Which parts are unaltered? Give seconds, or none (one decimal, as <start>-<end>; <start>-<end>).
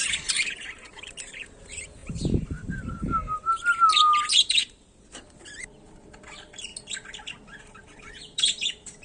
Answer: 4.6-5.1; 6.7-7.6